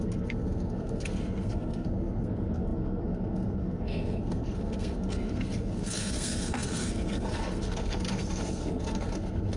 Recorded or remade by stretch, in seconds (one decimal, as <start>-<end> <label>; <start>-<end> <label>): 0.0-9.6 remade